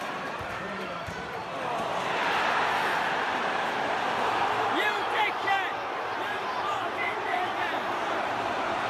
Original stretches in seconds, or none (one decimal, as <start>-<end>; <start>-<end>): 1.4-2.6